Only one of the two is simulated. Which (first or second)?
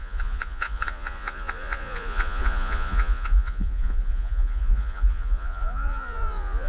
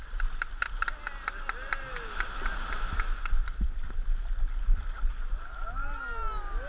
first